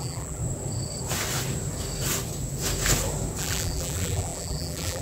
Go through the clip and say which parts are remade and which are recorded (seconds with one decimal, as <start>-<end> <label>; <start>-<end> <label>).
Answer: 0.0-0.4 remade; 0.4-3.4 recorded; 3.4-5.0 remade